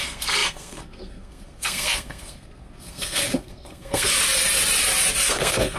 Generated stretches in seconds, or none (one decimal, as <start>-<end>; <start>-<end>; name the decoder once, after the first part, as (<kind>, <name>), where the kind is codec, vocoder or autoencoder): 0.0-4.1 (codec, SNAC); 5.3-5.8